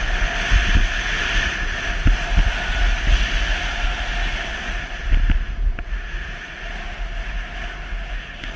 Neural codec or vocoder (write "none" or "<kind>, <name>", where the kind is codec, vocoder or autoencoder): none